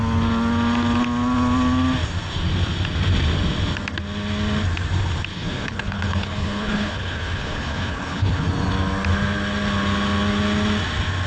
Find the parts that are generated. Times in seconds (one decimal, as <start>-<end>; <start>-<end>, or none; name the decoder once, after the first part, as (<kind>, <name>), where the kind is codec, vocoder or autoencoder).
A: 5.3-8.5 (codec, HILCodec)